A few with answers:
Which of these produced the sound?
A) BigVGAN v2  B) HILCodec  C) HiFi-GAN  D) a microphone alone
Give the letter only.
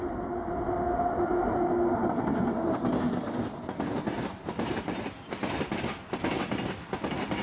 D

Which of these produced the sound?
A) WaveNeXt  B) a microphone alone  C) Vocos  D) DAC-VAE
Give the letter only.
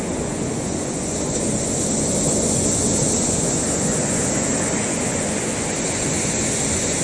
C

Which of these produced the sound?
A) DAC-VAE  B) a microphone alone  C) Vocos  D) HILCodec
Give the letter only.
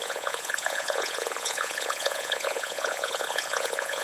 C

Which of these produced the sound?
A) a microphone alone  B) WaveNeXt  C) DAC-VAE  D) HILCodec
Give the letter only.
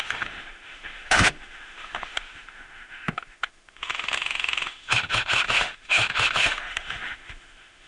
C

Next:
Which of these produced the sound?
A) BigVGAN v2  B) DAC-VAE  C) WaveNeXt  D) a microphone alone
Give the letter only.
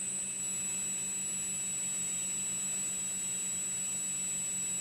D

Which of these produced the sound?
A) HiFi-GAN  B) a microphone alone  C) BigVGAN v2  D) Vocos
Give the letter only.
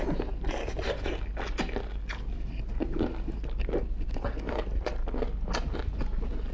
B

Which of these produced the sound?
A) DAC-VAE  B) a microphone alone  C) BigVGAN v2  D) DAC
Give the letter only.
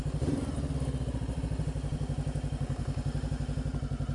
B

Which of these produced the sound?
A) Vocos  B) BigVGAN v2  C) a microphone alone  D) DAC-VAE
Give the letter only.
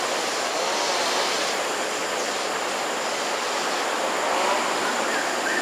C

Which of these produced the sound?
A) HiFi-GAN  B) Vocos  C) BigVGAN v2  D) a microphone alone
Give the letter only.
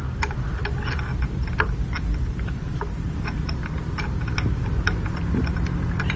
C